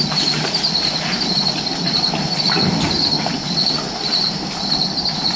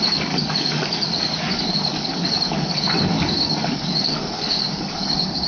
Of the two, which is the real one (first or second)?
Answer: first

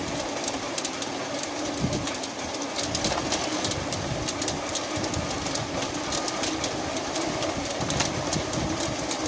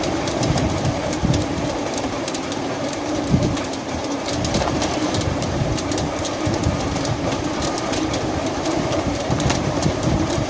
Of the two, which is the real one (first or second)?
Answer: first